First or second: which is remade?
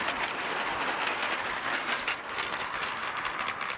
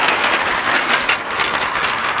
first